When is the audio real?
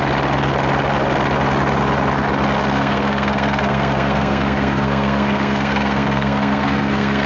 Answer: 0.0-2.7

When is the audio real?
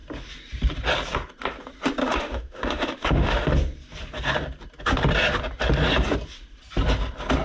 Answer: 0.0-2.0; 3.5-7.4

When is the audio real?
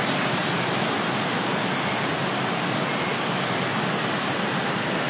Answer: 0.0-5.1